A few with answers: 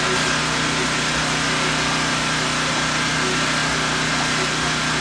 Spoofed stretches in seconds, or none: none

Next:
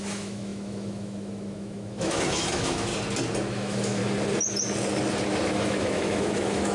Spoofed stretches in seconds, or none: 0.0-2.9 (autoencoder, DAC-VAE); 3.5-4.0; 5.5-6.7

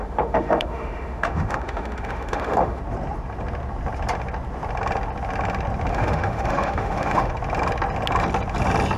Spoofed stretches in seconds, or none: 0.0-2.8 (autoencoder, DAC-VAE); 5.9-7.3

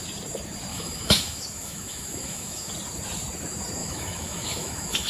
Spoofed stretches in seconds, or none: 0.7-2.7 (autoencoder, DAC-VAE); 3.8-5.1

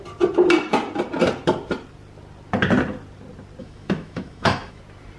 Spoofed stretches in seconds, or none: 3.6-4.8 (autoencoder, DAC-VAE)

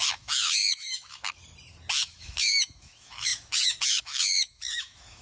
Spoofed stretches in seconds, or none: 0.0-1.4 (autoencoder, DAC-VAE); 2.0-5.2